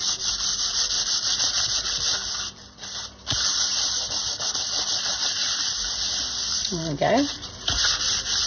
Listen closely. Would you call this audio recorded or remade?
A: remade